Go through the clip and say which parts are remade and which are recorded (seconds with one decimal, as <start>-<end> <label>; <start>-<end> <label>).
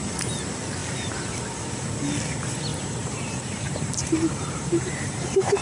0.0-2.7 recorded; 2.7-5.6 remade